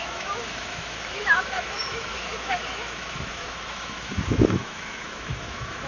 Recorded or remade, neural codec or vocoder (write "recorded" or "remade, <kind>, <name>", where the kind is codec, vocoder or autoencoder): remade, autoencoder, DAC-VAE